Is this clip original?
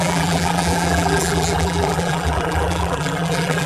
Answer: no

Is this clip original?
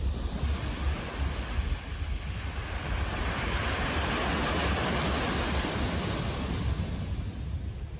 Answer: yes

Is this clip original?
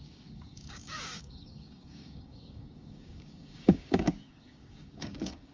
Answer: no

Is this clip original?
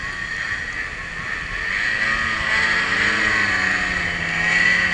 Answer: yes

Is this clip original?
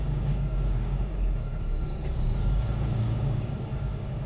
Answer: no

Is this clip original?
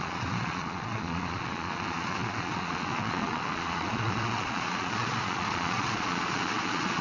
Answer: no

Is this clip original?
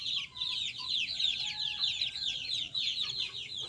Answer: no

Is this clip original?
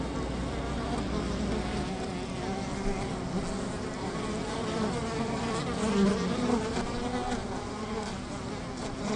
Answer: yes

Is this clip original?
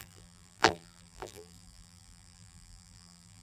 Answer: no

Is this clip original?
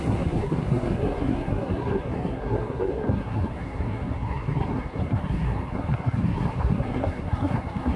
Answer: no